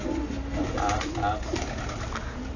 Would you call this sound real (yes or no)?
yes